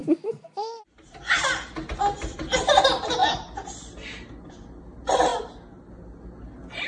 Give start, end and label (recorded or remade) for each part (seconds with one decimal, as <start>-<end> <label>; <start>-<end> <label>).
0.0-1.5 remade; 1.5-6.9 recorded